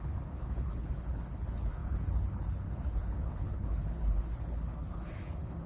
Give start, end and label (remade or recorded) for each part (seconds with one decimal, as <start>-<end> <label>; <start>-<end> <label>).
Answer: 0.0-5.7 remade